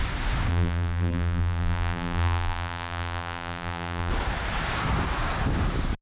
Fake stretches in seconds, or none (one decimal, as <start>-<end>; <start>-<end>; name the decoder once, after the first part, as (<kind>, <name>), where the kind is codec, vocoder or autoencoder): 0.5-4.1 (vocoder, BigVGAN v2)